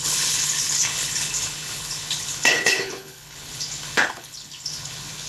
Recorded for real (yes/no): no